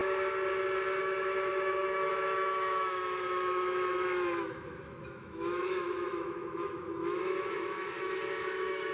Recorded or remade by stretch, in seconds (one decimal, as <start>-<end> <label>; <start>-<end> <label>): 0.0-1.0 recorded; 1.0-8.9 remade